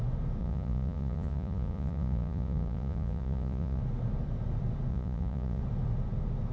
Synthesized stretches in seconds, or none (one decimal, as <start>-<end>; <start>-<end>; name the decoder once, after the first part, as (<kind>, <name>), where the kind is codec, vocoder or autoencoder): 0.4-3.8 (vocoder, Vocos); 4.9-5.6